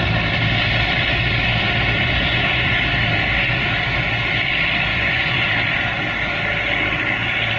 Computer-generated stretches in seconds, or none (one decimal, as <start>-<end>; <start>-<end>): 2.0-2.8; 4.9-5.5